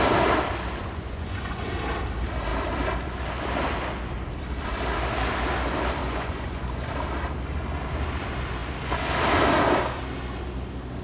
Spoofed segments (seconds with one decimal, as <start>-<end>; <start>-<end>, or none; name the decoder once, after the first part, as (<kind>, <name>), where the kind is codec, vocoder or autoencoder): 0.8-1.7 (vocoder, Vocos); 6.0-6.9